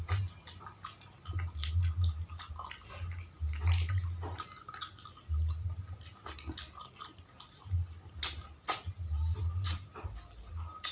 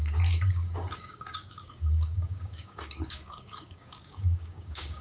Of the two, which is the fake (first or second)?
second